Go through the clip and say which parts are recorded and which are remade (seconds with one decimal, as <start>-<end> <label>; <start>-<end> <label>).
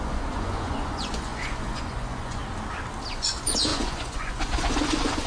0.0-2.4 remade; 2.4-3.1 recorded; 3.1-5.3 remade